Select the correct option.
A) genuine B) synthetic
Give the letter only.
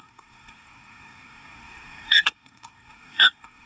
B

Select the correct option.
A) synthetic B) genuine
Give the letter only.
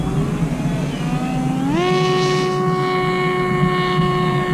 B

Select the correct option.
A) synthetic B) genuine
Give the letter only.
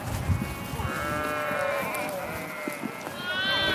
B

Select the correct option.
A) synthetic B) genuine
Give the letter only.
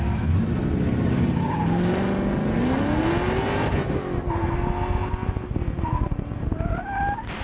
B